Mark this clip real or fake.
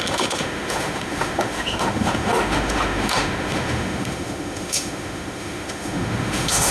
fake